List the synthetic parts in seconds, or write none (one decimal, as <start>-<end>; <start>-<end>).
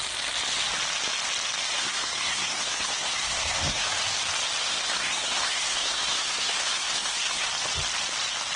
1.8-3.9; 4.6-7.5